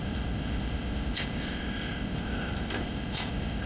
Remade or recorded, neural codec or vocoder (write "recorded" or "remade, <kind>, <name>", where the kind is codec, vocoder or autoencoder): remade, codec, ZipCodec